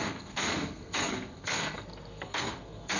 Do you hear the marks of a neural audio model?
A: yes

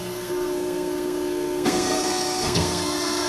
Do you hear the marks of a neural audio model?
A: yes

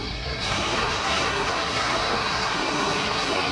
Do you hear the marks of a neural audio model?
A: yes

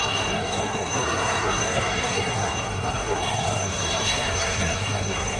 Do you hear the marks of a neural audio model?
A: yes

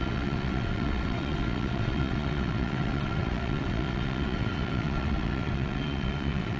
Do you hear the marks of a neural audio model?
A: yes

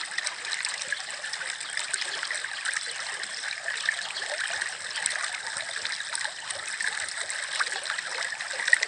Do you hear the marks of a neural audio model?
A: no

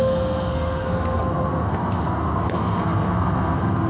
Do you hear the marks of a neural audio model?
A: yes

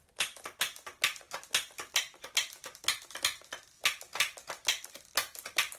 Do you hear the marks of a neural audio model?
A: no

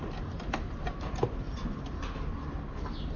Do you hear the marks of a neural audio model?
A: no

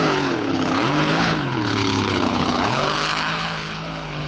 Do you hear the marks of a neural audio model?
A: yes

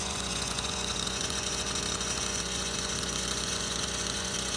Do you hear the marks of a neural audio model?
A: yes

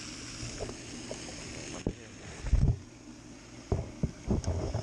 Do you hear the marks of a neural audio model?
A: no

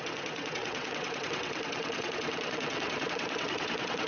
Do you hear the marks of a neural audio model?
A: yes